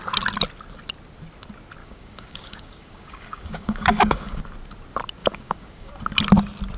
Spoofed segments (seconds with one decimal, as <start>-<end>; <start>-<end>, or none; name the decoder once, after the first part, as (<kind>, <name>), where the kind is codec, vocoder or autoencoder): 1.8-4.4 (codec, DAC); 5.2-5.9